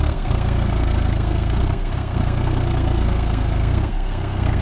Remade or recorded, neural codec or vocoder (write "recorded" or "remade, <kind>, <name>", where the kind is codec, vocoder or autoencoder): remade, codec, SNAC